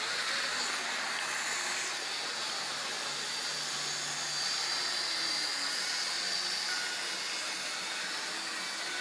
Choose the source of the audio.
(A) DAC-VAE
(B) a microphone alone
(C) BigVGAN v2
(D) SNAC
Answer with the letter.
B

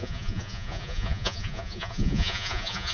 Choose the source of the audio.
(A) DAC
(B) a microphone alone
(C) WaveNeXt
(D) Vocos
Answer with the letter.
D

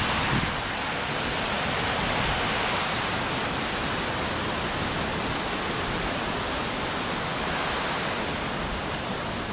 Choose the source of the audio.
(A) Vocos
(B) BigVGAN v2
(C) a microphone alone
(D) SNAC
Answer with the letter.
C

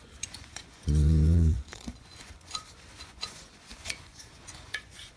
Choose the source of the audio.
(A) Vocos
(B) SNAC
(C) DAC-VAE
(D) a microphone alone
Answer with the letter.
A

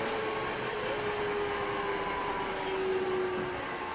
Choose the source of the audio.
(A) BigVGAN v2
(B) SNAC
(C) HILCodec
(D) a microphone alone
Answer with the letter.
D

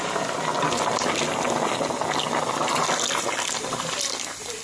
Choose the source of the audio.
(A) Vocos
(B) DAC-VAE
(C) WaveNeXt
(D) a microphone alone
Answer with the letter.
D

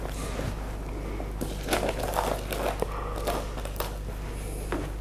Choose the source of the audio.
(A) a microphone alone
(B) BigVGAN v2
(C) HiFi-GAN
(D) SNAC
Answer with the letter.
A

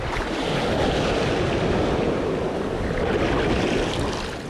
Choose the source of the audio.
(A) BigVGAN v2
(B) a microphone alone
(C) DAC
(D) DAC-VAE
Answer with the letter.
B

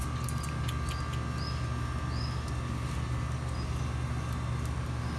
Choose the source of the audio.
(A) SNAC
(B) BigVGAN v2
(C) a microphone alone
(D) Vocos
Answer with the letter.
C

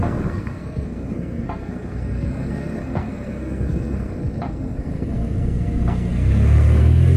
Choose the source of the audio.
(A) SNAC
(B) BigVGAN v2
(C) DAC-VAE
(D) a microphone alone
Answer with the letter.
A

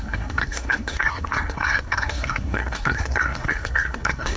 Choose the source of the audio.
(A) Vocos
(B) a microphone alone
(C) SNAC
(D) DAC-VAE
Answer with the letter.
C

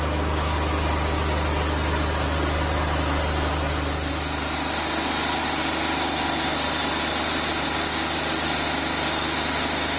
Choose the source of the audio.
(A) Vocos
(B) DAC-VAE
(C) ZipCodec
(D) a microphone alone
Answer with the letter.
D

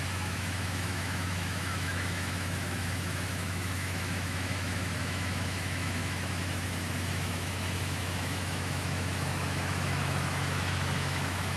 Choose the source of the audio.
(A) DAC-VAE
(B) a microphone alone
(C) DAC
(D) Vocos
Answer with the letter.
A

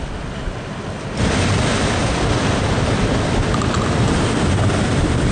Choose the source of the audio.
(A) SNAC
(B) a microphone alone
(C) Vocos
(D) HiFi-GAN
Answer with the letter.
B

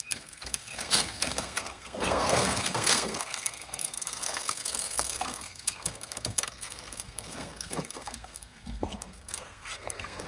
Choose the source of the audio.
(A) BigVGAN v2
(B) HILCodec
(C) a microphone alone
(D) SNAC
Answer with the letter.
D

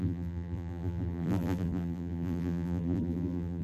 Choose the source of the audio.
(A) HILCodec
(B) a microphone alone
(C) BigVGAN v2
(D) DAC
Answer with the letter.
C